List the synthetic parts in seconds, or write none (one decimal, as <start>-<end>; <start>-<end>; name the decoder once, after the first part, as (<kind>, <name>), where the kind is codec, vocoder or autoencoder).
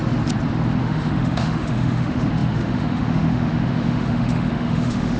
0.8-5.2 (autoencoder, DAC-VAE)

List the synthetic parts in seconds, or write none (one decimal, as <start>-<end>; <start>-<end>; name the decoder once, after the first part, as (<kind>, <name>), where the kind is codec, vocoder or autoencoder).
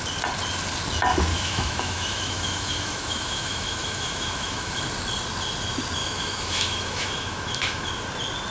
1.3-4.8 (autoencoder, DAC-VAE); 6.0-7.9